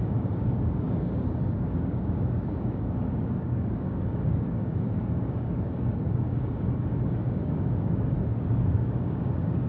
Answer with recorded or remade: remade